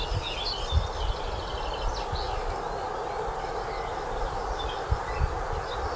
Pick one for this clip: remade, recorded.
recorded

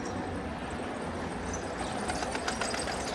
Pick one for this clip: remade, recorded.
recorded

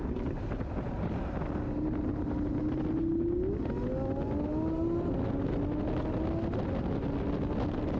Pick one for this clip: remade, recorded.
recorded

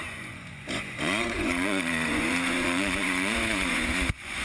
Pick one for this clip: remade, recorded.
remade